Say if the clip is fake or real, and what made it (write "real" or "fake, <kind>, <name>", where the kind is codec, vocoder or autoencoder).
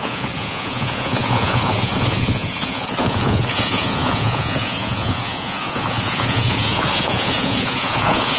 fake, vocoder, Vocos